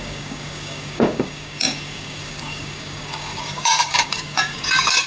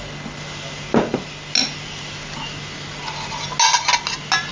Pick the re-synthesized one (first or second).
first